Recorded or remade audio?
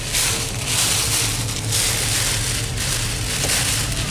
recorded